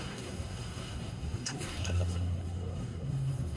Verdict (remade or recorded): remade